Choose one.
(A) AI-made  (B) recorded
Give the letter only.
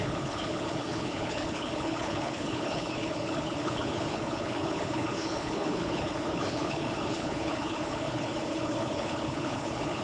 A